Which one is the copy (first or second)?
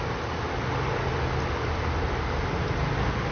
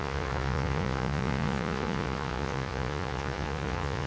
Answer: second